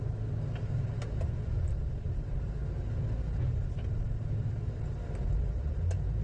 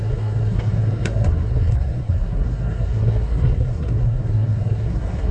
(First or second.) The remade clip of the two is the second